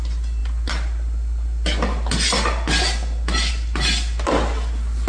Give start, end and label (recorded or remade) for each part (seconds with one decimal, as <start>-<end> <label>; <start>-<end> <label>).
0.0-5.1 recorded